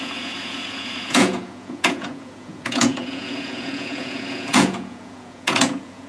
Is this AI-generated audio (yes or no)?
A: yes